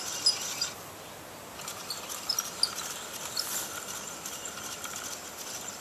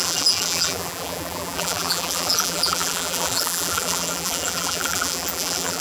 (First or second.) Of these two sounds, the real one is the first